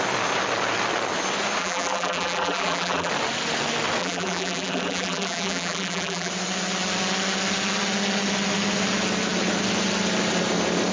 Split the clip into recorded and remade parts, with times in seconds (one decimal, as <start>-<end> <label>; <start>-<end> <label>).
0.0-1.6 recorded; 1.6-3.1 remade; 3.1-4.0 recorded; 4.0-6.3 remade; 6.3-10.9 recorded